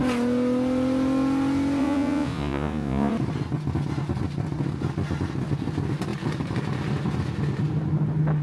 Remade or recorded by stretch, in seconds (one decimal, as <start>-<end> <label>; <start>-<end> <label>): 0.0-1.8 recorded; 1.8-3.1 remade; 3.1-8.4 recorded